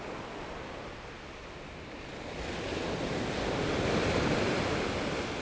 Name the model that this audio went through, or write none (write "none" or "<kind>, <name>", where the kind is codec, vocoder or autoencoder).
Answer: none